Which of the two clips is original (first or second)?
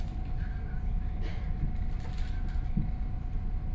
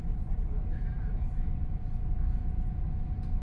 first